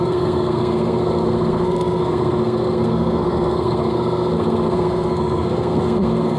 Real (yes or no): no